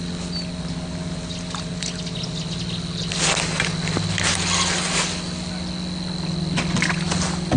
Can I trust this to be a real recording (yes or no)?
yes